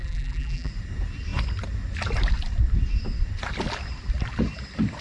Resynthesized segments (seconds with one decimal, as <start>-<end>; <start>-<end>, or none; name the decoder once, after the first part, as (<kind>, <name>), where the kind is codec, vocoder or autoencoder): 0.0-0.7 (vocoder, BigVGAN v2)